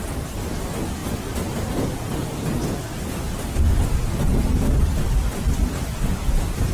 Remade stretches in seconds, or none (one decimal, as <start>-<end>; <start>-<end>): none